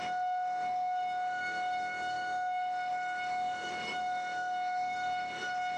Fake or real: fake